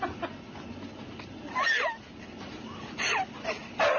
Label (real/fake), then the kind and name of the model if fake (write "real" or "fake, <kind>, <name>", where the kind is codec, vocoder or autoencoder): real